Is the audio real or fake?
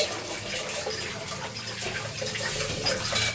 real